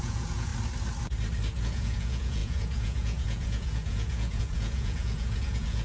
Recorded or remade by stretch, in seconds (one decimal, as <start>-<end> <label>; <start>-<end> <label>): 0.0-0.5 remade; 0.5-1.6 recorded; 1.6-5.8 remade